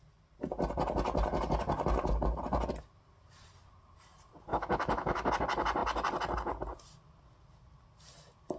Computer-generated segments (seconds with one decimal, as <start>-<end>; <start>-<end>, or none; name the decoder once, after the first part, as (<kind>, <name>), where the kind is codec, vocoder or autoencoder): 4.5-5.3 (autoencoder, DAC-VAE)